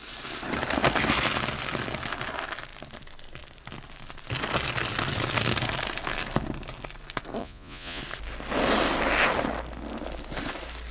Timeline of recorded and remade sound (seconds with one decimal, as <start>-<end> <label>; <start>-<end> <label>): 0.0-7.4 recorded; 7.4-8.0 remade; 8.0-10.9 recorded